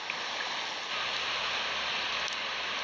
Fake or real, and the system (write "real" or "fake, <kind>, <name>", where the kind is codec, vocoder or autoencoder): real